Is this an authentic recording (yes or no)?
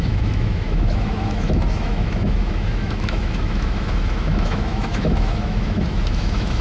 no